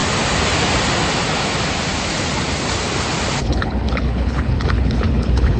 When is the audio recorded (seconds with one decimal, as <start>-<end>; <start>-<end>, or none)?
0.0-3.4